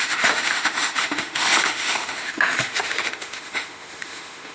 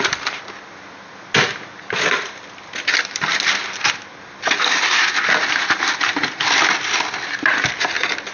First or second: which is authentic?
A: second